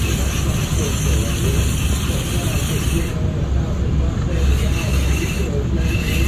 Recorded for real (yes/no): yes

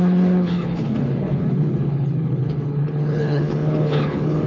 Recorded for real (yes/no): no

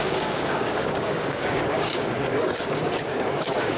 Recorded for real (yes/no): no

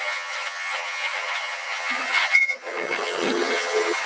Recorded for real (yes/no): no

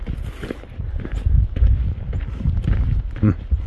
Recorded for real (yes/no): yes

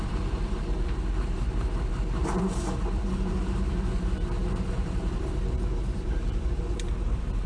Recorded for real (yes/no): no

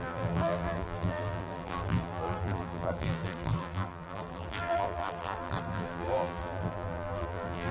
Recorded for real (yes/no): no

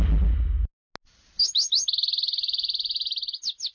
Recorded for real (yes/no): yes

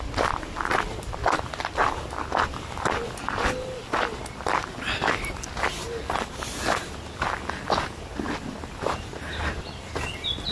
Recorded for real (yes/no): yes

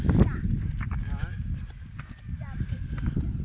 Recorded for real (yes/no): yes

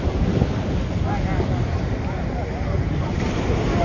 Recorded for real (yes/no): yes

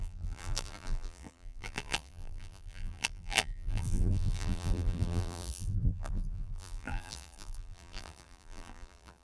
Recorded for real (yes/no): no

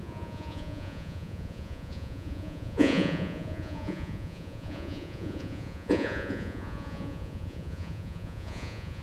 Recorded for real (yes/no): no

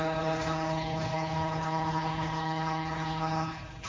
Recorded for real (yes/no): no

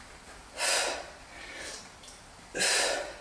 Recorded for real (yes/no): yes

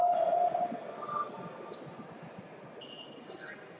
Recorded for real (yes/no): yes